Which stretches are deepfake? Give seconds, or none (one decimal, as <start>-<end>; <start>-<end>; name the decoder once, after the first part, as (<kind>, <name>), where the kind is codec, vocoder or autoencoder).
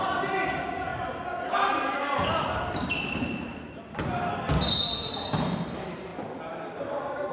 none